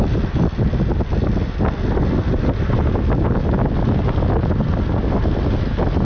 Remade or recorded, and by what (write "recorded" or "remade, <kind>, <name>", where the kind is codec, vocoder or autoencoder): recorded